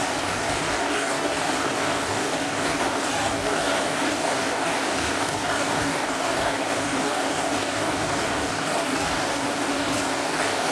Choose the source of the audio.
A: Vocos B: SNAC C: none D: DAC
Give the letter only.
D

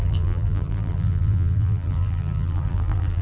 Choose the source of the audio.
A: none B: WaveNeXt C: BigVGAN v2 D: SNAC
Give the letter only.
C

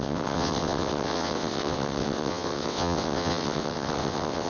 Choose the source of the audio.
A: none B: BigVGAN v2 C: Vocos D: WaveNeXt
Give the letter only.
D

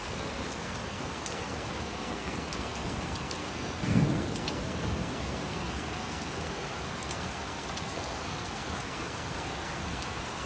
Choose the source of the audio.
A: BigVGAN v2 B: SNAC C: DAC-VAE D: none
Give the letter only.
B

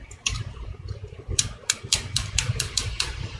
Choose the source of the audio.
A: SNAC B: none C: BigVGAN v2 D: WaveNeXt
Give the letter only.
C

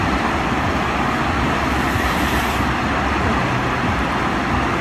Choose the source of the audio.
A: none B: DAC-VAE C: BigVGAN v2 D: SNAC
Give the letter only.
A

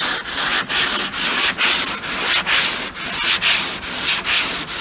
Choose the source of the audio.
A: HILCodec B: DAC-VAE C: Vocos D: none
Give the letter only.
D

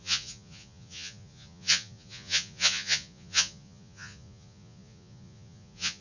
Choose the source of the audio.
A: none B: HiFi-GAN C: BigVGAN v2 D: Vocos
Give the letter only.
D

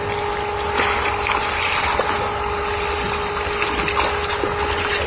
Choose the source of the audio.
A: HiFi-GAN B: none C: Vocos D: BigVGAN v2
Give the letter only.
B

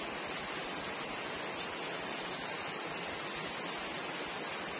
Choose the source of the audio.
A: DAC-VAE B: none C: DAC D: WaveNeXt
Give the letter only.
B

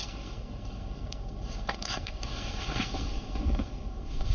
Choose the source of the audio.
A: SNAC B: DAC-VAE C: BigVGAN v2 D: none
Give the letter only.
A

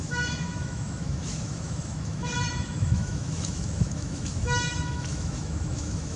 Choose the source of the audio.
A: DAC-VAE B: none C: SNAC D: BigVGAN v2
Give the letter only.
A